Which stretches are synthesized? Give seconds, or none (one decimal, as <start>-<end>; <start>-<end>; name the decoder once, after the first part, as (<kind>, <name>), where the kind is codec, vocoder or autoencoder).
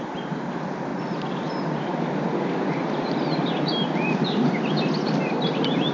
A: none